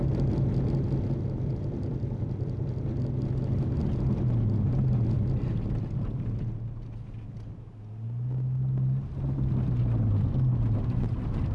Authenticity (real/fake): real